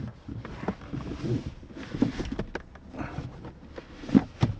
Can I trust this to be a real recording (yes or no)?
yes